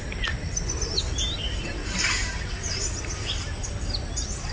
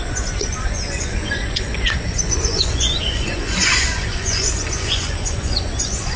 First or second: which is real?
first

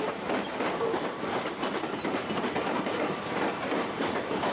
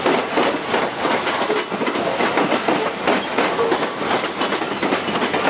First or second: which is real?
second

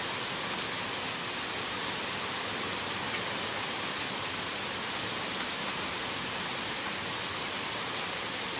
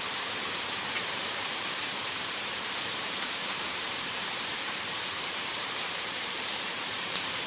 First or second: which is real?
first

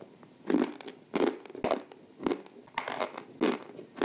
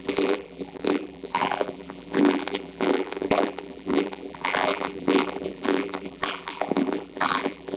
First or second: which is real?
first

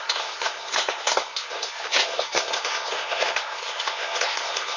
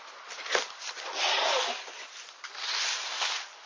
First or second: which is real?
second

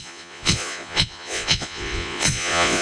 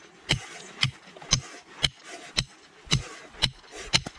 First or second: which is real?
second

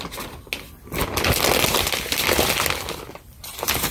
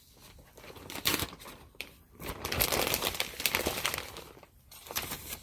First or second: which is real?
first